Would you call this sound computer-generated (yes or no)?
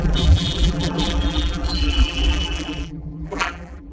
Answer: yes